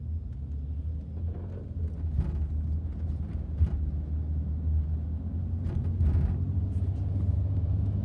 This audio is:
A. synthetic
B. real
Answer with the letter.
B